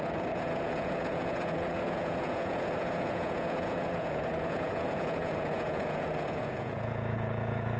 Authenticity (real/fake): fake